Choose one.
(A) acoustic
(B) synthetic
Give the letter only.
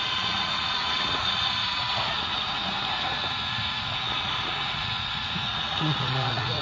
B